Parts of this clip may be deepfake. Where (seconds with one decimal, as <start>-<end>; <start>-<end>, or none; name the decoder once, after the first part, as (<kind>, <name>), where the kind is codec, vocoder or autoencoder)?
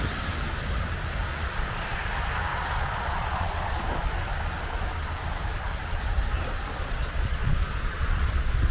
1.3-2.1 (vocoder, Vocos); 2.5-3.9; 6.7-8.7